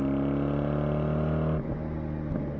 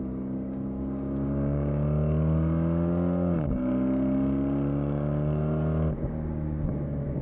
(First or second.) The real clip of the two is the first